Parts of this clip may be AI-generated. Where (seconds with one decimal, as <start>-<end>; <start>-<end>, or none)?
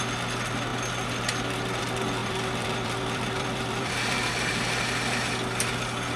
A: 2.2-4.5